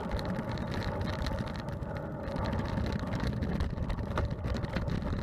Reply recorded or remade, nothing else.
recorded